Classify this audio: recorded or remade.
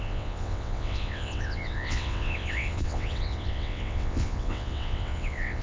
remade